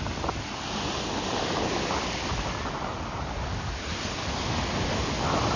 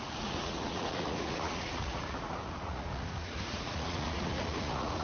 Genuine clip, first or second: first